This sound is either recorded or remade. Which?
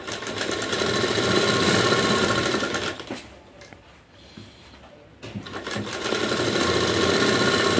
recorded